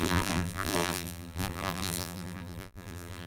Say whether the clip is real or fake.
fake